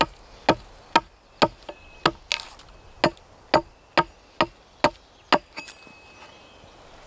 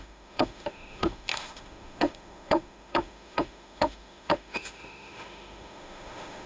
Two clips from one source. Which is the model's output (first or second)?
second